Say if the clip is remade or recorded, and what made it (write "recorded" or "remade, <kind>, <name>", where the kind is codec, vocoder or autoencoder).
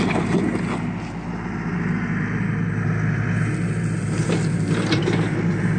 recorded